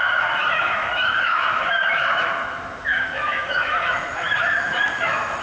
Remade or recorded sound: remade